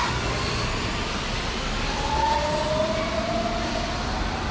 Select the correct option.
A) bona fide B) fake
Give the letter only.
A